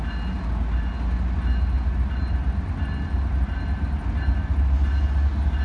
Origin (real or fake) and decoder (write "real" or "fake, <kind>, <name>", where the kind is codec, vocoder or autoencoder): real